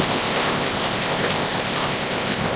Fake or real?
fake